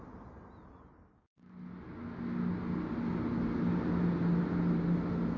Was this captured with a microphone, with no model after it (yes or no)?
yes